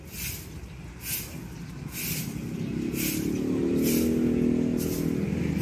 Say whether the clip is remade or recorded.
recorded